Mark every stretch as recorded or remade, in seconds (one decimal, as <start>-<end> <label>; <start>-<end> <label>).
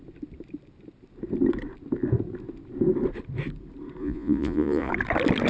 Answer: 0.0-4.0 recorded; 4.0-4.9 remade; 4.9-5.5 recorded